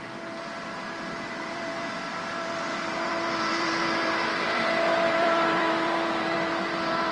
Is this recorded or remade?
remade